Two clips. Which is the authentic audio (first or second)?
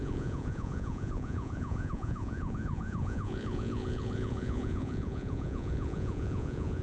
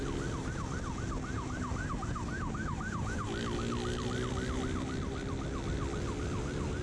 second